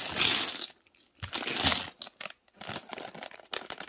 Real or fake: real